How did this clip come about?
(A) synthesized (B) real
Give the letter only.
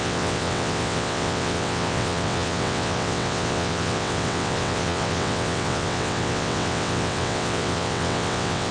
A